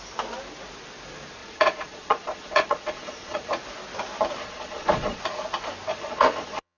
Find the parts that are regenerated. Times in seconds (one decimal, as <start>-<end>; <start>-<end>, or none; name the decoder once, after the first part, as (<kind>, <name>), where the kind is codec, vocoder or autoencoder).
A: 1.4-3.5 (vocoder, Vocos); 4.4-5.2; 5.9-6.8

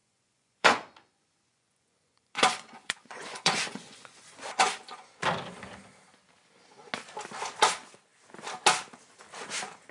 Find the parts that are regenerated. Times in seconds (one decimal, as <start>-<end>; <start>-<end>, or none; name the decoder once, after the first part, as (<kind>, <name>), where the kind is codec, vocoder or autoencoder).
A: 0.0-5.2 (vocoder, Vocos)

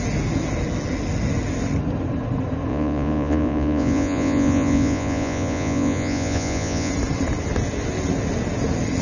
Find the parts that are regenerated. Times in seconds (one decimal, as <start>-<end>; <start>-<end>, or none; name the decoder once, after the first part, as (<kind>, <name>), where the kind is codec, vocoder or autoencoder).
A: 2.7-6.9 (vocoder, Vocos)

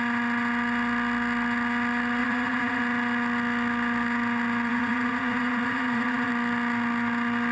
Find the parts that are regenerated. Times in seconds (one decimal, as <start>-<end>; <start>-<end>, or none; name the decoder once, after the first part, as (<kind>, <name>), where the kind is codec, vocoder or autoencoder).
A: 2.2-2.8 (vocoder, Vocos); 4.7-6.3

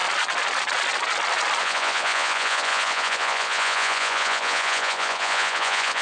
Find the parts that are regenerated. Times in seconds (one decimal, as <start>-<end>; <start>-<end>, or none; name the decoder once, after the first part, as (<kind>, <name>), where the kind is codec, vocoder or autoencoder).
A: 1.6-6.0 (vocoder, Vocos)

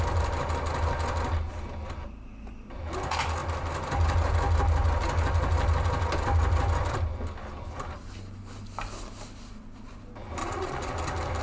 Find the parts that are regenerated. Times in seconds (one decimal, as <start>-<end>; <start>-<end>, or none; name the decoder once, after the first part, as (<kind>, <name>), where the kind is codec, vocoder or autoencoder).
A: 10.4-10.9 (vocoder, Vocos)

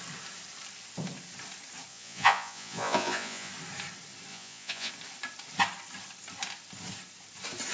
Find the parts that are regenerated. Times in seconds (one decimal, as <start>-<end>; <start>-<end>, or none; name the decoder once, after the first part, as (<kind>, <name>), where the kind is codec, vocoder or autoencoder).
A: 1.9-3.5 (vocoder, Vocos); 4.3-4.9

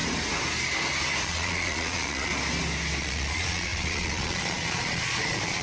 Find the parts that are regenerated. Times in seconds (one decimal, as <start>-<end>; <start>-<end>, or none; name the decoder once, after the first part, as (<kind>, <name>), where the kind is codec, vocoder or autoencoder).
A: 1.2-2.3 (vocoder, Vocos); 3.0-5.6